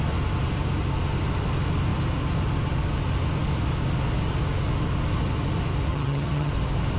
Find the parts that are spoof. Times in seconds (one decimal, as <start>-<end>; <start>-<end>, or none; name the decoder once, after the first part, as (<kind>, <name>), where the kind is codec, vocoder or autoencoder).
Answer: 5.9-6.5 (vocoder, HiFi-GAN)